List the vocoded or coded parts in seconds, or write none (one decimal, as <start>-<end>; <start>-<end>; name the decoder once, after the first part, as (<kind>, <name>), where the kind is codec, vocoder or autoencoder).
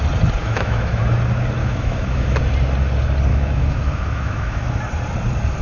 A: 0.4-1.0 (autoencoder, DAC-VAE); 1.6-2.4; 3.3-4.6